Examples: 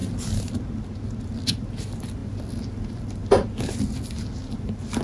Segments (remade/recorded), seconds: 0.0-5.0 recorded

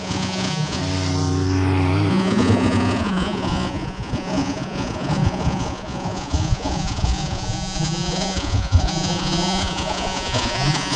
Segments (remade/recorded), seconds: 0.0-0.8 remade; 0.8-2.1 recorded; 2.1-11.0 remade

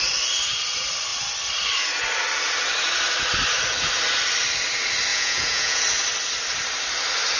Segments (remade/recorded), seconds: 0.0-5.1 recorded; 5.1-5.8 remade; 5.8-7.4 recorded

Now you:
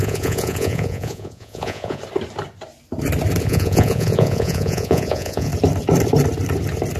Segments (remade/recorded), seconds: 0.0-2.0 remade; 2.0-3.4 recorded; 3.4-5.5 remade; 5.5-7.0 recorded

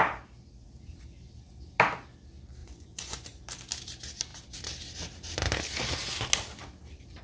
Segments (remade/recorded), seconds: 0.0-2.6 recorded; 2.6-3.4 remade; 3.4-7.2 recorded